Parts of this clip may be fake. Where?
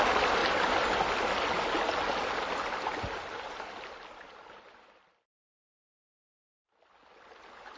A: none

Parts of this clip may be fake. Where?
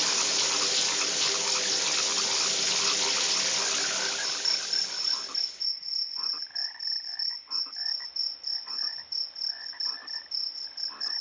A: 0.0-1.5 (vocoder, BigVGAN v2)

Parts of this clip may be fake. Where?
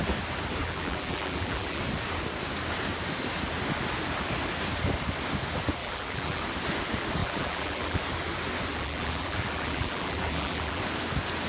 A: 0.6-1.8 (vocoder, BigVGAN v2); 5.8-6.4; 7.2-8.0; 8.7-10.8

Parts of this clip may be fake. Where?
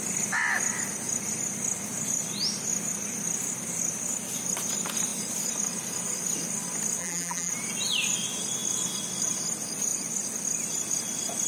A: 7.0-7.5 (vocoder, BigVGAN v2)